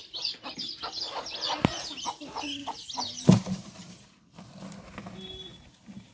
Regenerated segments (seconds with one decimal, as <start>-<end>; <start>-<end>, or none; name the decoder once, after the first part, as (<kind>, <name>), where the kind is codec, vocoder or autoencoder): 2.6-3.7 (vocoder, BigVGAN v2)